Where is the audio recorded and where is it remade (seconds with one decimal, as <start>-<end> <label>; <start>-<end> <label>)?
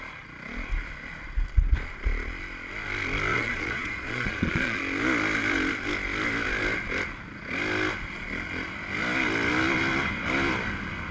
0.0-3.3 recorded; 3.3-4.8 remade; 4.8-11.1 recorded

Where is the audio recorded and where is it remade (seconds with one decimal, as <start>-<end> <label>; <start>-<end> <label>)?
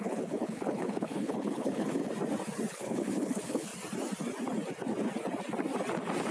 0.0-2.0 remade; 2.0-2.7 recorded; 2.7-3.7 remade; 3.7-6.3 recorded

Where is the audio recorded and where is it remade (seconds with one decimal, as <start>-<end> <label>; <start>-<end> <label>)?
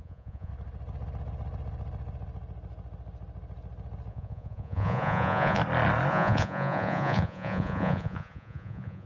0.0-0.5 remade; 0.5-4.1 recorded; 4.1-5.6 remade; 5.6-6.1 recorded; 6.1-9.1 remade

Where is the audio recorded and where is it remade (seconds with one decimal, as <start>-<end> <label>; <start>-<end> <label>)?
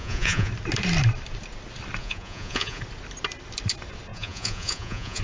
0.0-0.5 remade; 0.5-2.0 recorded; 2.0-2.8 remade; 2.8-4.1 recorded; 4.1-5.2 remade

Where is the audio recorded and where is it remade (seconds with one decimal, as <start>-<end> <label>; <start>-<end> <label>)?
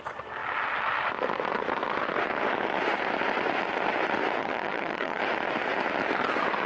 0.0-4.4 recorded; 4.4-5.2 remade; 5.2-6.7 recorded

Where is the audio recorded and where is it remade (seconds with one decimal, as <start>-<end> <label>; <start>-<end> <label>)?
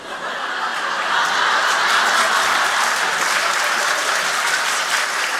0.0-5.4 recorded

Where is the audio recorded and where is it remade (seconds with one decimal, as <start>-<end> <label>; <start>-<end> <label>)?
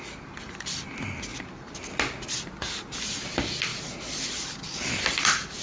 0.0-1.3 recorded; 1.3-1.8 remade; 1.8-3.7 recorded; 3.7-4.5 remade; 4.5-5.6 recorded